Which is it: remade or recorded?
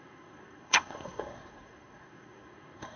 remade